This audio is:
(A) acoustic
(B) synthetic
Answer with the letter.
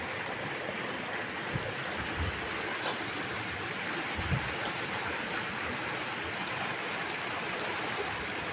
A